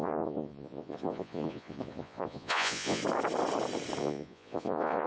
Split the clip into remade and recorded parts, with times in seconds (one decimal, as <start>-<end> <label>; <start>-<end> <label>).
0.0-3.0 remade; 3.0-4.0 recorded; 4.0-5.1 remade